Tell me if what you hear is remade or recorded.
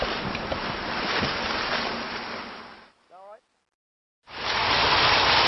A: recorded